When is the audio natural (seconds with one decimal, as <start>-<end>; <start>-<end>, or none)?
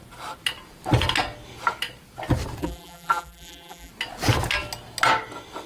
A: 0.0-2.6; 3.9-5.7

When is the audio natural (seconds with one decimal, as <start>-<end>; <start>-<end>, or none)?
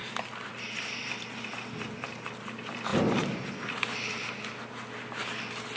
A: 0.0-5.8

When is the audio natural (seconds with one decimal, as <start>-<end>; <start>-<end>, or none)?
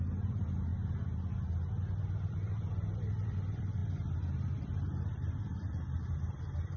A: 0.7-2.3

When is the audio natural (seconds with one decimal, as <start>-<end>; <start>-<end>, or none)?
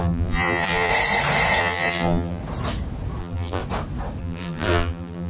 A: 0.9-1.6; 2.4-3.2; 3.6-4.2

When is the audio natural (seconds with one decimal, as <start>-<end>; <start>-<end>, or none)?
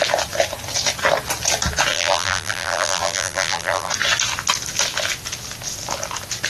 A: 0.0-1.9; 3.9-6.5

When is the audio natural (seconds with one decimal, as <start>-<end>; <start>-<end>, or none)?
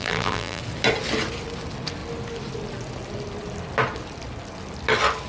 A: 0.6-5.3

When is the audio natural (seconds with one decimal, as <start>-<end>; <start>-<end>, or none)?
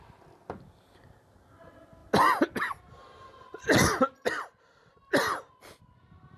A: 0.0-6.4